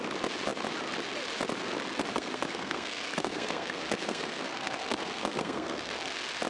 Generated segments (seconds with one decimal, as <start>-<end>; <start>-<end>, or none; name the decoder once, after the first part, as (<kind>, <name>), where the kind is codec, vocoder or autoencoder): 2.1-6.0 (codec, SNAC)